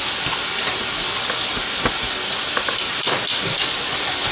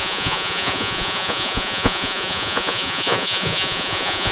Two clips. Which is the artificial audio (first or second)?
second